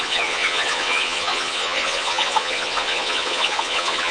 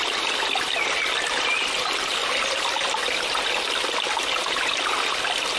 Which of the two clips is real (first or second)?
second